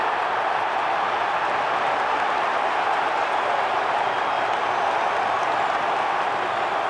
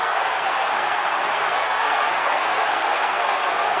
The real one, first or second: first